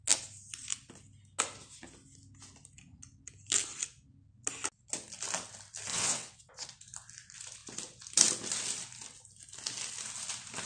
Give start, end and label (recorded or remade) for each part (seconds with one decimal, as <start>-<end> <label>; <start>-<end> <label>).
0.0-5.9 recorded; 5.9-6.5 remade; 6.5-10.7 recorded